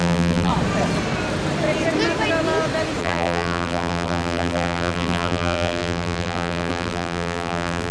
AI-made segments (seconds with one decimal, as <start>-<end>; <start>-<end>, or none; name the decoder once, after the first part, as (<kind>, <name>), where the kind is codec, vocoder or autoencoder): 0.0-0.5 (vocoder, BigVGAN v2); 3.0-7.9